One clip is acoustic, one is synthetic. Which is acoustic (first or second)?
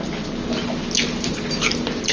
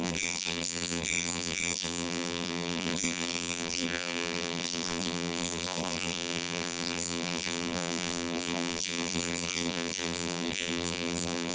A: first